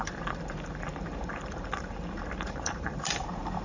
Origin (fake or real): fake